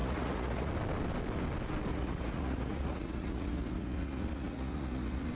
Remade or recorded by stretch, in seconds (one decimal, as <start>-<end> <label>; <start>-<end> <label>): 0.0-0.7 remade; 0.7-1.9 recorded; 1.9-5.3 remade